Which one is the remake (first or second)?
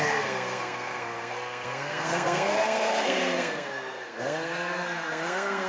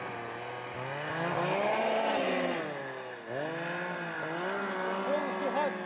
first